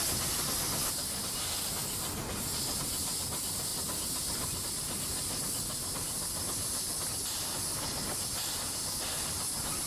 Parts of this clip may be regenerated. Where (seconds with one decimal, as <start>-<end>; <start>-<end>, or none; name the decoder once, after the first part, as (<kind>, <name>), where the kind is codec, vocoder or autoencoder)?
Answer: 3.7-4.6 (vocoder, BigVGAN v2)